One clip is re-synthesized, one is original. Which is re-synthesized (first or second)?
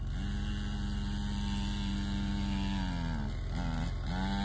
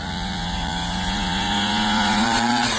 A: second